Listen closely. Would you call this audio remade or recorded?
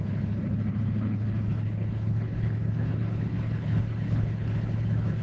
remade